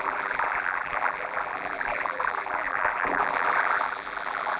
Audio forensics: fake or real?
fake